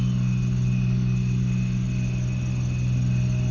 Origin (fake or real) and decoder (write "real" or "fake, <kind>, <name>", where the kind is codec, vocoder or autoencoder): real